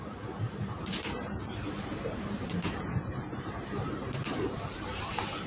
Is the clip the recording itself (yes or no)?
no